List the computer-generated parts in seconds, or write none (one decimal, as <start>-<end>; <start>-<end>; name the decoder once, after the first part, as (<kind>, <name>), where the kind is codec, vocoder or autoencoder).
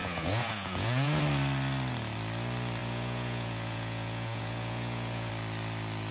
0.0-1.2 (vocoder, Vocos); 2.8-5.3